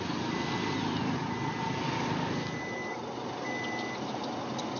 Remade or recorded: recorded